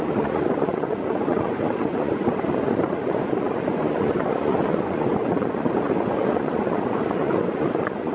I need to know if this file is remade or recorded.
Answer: remade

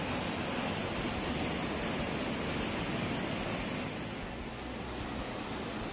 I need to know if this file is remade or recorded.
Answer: recorded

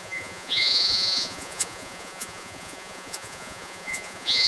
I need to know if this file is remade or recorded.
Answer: remade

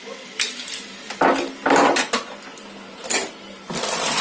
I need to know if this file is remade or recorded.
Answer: recorded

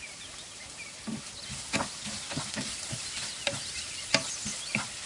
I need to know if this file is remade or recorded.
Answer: recorded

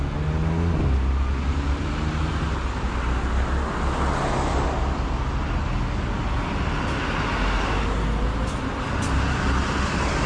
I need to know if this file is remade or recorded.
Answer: recorded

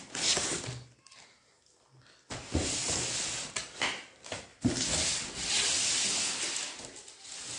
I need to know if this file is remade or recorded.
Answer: recorded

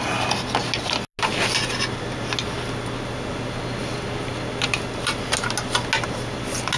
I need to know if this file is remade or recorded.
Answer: recorded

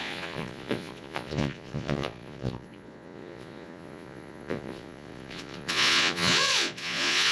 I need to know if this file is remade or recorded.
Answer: remade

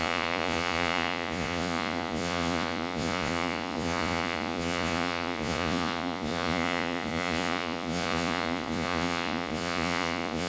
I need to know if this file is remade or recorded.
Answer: remade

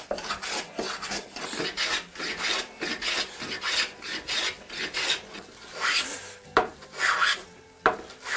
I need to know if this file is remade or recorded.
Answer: recorded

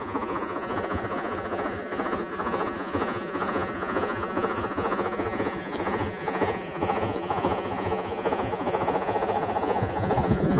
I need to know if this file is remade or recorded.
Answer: remade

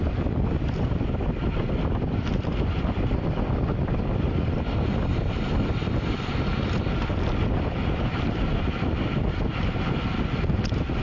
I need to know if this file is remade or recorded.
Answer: recorded